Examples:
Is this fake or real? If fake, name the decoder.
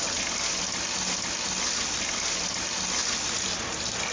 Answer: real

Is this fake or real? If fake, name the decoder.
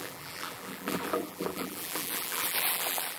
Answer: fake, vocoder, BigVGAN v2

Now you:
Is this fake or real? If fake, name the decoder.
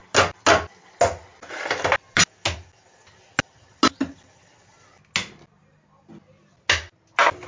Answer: real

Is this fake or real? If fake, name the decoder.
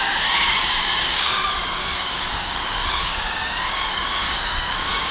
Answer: fake, codec, DAC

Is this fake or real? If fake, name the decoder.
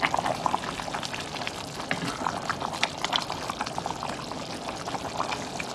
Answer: real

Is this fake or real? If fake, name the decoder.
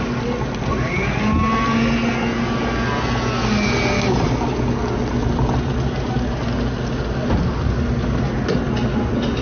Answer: real